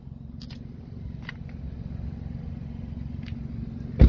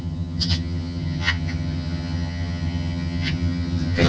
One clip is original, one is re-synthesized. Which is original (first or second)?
first